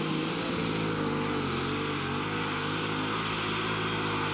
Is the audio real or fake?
real